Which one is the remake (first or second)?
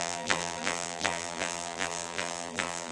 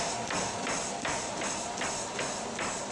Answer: first